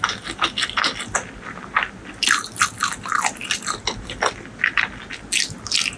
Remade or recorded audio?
recorded